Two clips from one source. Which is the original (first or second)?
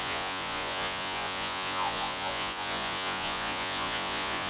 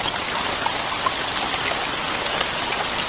second